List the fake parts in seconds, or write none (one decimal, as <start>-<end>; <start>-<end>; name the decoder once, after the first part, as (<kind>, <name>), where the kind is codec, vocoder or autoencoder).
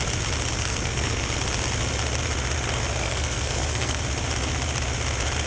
0.5-1.4 (codec, SNAC); 3.0-4.0